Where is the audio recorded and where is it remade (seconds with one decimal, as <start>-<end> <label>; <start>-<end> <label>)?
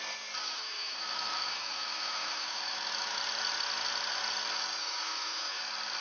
0.0-0.4 recorded; 0.4-3.2 remade; 3.2-4.8 recorded; 4.8-5.6 remade; 5.6-6.0 recorded